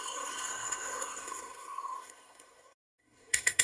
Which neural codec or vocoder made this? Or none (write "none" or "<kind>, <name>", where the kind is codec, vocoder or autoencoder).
codec, SNAC